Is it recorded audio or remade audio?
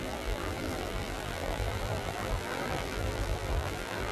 remade